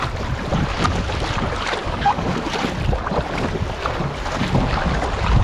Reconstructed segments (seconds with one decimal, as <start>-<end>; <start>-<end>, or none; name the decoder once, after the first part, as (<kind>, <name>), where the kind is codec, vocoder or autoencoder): 1.8-2.5 (codec, DAC)